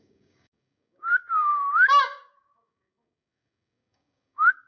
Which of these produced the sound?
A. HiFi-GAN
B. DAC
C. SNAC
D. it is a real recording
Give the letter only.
B